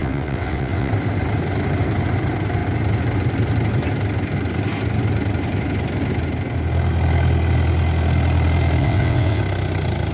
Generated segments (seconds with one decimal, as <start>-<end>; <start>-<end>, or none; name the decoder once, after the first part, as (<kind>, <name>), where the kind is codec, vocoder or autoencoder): 0.0-0.9 (vocoder, WaveNeXt); 8.8-9.4